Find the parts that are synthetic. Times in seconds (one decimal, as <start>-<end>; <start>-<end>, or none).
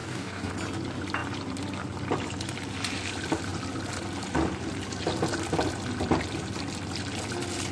0.0-0.5